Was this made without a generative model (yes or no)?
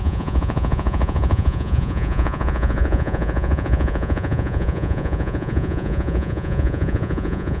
no